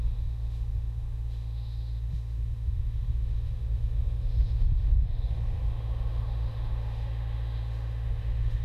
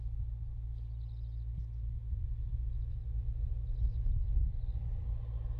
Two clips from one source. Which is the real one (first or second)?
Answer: second